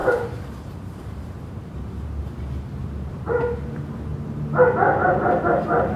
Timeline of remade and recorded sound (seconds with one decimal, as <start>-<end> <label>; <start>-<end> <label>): 0.0-2.2 remade; 2.2-2.8 recorded; 2.8-3.4 remade; 3.4-6.0 recorded